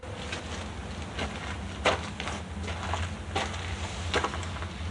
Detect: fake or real real